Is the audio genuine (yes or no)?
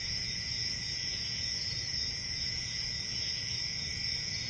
no